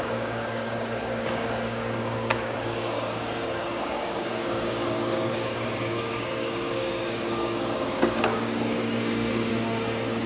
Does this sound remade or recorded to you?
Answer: remade